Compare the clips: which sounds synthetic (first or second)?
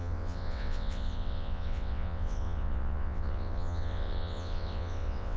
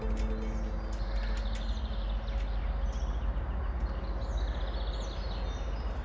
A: first